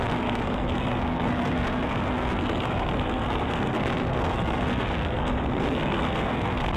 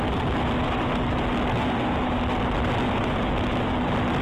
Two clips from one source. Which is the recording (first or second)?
second